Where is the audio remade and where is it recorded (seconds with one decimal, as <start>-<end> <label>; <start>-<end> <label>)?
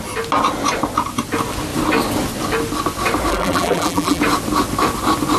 0.0-3.3 recorded; 3.3-4.2 remade; 4.2-5.4 recorded